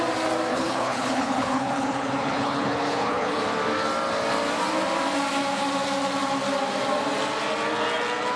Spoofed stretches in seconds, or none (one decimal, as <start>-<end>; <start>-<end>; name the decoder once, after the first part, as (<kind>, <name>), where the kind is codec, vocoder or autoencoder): 0.5-3.4 (codec, HILCodec)

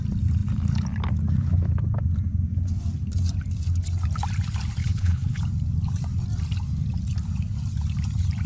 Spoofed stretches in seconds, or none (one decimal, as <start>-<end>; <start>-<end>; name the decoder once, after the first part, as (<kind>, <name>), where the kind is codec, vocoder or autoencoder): 4.8-5.4 (codec, HILCodec)

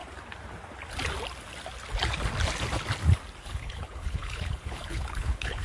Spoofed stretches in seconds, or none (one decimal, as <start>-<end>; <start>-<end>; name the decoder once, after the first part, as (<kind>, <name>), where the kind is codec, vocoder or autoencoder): 3.4-5.6 (codec, HILCodec)

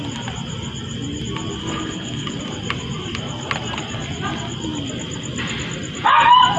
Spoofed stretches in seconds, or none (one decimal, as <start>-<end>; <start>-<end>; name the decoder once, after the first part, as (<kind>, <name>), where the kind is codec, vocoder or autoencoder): 1.6-2.4 (codec, HILCodec)

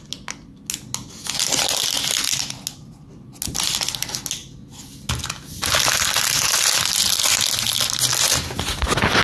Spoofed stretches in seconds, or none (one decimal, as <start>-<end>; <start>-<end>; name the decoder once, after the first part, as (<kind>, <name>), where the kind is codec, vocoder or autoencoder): none